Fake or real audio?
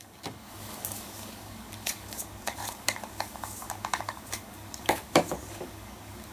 fake